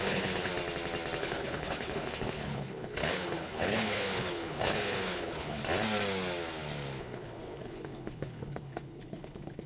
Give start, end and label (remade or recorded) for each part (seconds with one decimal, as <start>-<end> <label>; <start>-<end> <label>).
0.0-0.5 remade; 0.5-1.2 recorded; 1.2-5.6 remade; 5.6-7.0 recorded; 7.0-9.7 remade

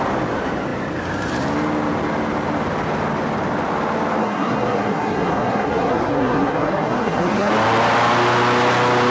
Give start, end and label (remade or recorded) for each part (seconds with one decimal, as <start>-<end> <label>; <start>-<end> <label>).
0.0-4.2 recorded; 4.2-7.5 remade; 7.5-9.1 recorded